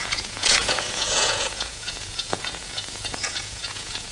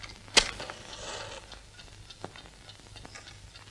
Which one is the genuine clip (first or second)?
second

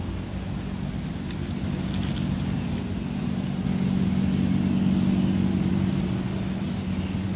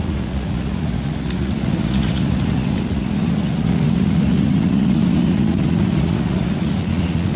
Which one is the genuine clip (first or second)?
first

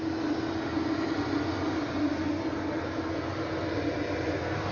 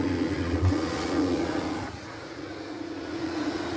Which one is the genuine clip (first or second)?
first